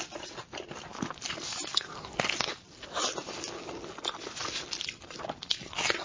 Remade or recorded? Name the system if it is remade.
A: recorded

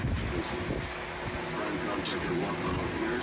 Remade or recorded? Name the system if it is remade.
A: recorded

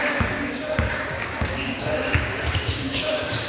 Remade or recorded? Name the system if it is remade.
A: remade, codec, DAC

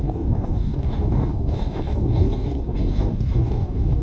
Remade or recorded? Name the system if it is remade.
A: remade, codec, DAC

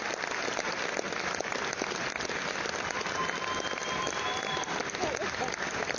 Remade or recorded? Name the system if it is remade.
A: recorded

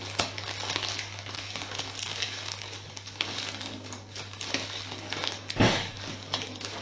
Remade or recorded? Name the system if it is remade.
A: remade, codec, DAC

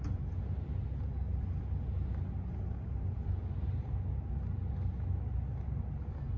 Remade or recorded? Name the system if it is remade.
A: recorded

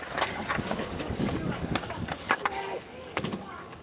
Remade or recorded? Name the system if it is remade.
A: remade, codec, DAC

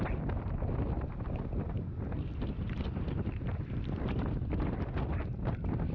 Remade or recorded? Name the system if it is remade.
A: recorded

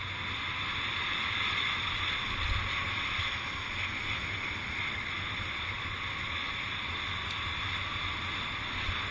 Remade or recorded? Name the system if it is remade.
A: recorded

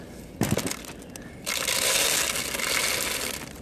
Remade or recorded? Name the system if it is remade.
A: recorded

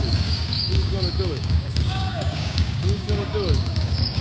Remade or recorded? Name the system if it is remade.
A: remade, codec, DAC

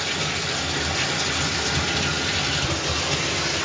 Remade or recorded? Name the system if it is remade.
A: recorded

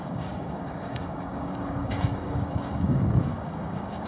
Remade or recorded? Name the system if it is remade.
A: remade, codec, DAC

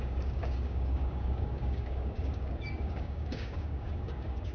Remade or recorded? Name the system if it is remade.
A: remade, codec, DAC